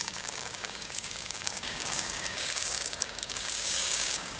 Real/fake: fake